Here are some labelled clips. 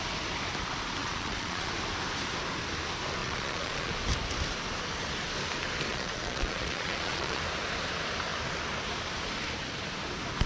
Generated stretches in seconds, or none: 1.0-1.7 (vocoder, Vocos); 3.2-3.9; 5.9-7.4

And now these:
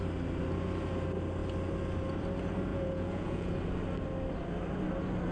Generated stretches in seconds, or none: 2.7-3.5 (vocoder, Vocos)